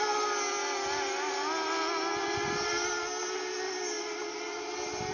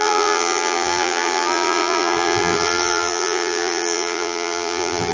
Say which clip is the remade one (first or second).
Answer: second